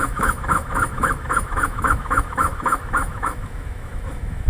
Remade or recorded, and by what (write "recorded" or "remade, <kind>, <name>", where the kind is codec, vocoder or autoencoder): remade, autoencoder, DAC-VAE